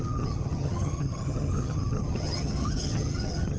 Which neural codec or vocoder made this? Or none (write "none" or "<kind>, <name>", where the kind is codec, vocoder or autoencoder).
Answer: vocoder, HiFi-GAN